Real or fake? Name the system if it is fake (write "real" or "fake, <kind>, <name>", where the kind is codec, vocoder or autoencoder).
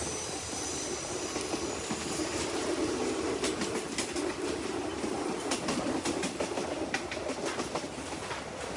real